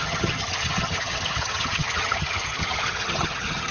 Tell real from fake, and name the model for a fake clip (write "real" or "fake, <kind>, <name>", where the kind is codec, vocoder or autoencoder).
fake, vocoder, HiFi-GAN